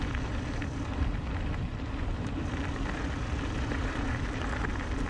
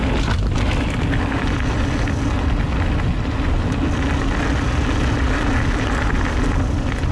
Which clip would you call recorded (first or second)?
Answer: second